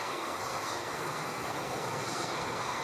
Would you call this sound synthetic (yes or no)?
yes